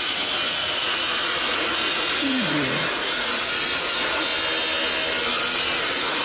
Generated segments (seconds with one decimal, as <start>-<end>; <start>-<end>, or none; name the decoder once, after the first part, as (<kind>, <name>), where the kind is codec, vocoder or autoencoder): 0.0-4.3 (vocoder, Vocos); 5.8-6.2